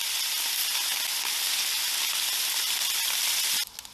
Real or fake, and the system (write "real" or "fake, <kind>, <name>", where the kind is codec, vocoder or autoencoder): real